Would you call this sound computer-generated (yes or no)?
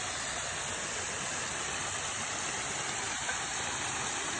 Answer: no